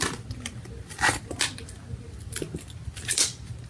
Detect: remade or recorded recorded